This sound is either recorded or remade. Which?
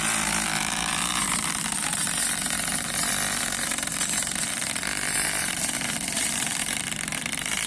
remade